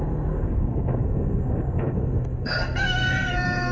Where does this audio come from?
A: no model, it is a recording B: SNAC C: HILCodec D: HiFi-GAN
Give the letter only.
B